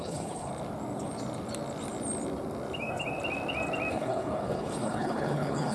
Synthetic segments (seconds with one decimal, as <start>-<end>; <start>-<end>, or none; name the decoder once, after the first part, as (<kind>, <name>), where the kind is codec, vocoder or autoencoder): 0.0-0.5 (codec, HILCodec); 3.9-5.7